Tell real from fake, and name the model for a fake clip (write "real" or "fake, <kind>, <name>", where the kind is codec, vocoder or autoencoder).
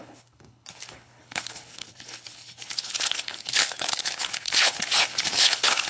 fake, codec, HILCodec